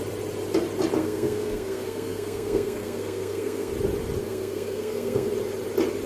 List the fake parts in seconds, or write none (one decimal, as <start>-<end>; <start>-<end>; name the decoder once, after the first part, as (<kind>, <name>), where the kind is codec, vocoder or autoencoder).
1.0-3.7 (codec, SNAC); 4.2-5.3